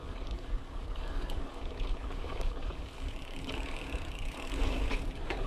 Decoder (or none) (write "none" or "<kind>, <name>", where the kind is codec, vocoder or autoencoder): codec, DAC